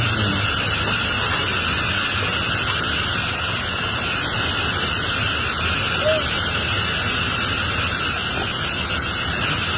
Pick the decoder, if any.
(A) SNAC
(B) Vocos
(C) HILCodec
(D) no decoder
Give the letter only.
D